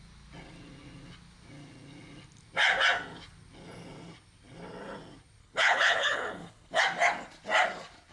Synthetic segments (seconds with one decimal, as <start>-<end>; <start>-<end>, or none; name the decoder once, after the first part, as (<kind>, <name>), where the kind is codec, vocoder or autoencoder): 5.4-6.8 (codec, HILCodec)

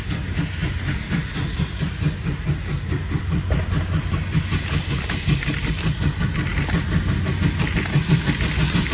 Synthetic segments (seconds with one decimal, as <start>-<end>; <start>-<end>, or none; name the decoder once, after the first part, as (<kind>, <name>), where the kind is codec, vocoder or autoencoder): none

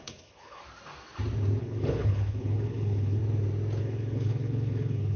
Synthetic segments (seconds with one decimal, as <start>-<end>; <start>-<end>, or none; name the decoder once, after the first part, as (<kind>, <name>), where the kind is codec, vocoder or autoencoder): 0.0-0.6 (codec, HILCodec); 1.6-3.2; 3.8-5.2

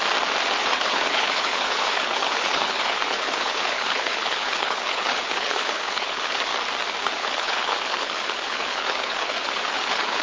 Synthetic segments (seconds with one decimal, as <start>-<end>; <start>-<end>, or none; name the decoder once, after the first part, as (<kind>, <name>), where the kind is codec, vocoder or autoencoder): 0.6-6.5 (codec, HILCodec); 7.0-10.2

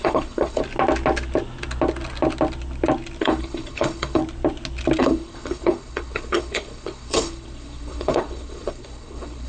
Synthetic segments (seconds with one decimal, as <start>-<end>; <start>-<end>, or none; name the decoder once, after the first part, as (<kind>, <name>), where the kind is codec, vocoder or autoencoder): 0.0-0.6 (codec, HILCodec); 3.2-4.2; 5.0-9.5

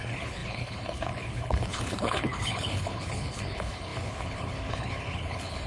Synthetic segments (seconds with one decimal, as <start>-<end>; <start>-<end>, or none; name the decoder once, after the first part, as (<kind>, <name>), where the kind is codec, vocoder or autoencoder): 0.0-5.7 (codec, HILCodec)

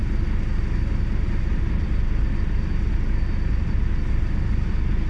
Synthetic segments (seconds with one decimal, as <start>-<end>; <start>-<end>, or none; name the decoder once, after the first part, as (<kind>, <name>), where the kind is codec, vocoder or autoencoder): none

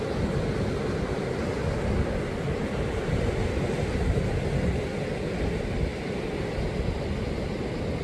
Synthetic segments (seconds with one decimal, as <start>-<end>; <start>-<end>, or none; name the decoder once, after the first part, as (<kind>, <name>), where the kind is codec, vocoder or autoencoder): none